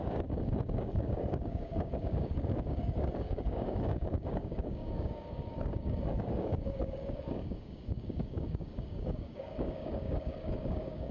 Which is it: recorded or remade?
remade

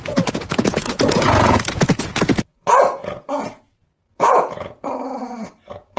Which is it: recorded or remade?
remade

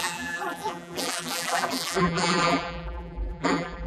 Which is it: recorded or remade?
remade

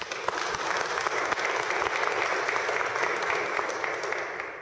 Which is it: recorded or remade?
recorded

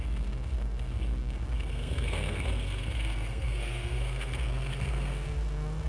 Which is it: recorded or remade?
remade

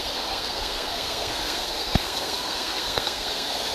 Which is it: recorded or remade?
remade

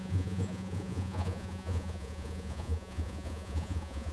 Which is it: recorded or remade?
remade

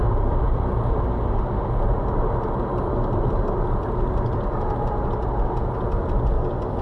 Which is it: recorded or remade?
recorded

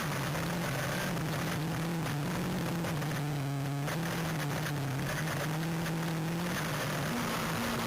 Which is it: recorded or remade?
recorded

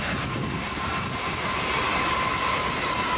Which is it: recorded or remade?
recorded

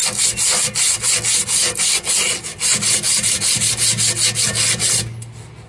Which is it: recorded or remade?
recorded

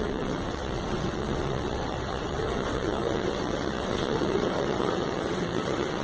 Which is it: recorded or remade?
remade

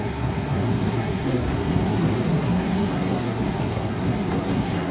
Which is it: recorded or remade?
remade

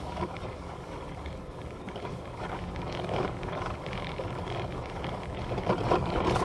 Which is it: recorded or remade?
remade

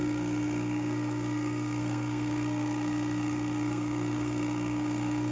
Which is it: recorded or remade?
remade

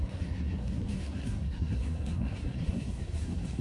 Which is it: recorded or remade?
remade